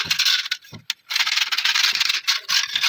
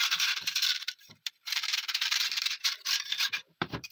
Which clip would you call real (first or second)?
first